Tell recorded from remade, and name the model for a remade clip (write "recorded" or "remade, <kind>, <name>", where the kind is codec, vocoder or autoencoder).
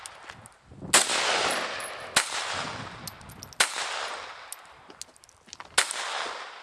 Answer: recorded